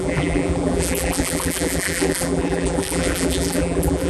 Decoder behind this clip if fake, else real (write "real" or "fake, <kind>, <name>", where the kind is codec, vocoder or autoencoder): fake, vocoder, BigVGAN v2